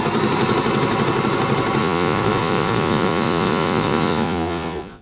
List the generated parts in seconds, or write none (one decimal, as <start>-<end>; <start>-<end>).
1.8-5.0